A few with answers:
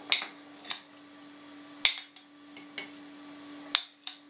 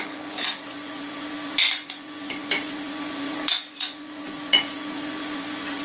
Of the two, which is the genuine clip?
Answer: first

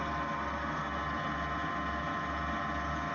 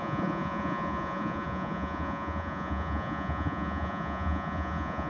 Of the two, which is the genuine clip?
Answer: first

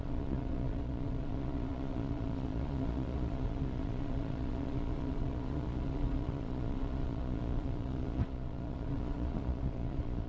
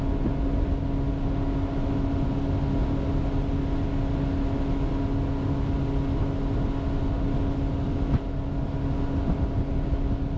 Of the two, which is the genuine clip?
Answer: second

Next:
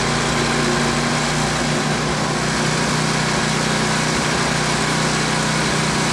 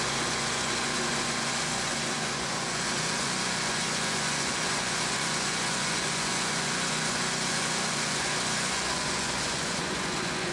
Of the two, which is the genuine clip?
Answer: first